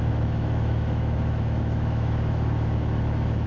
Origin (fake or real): fake